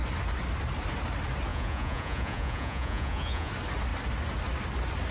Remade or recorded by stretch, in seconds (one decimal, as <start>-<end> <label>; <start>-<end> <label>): 0.0-1.5 recorded; 1.5-3.5 remade; 3.5-5.1 recorded